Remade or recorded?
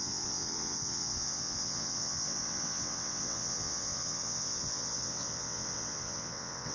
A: remade